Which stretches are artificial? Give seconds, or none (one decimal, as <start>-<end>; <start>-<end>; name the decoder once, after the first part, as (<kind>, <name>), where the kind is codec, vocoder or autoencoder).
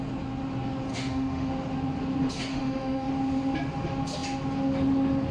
0.9-1.5 (autoencoder, DAC-VAE); 2.5-3.1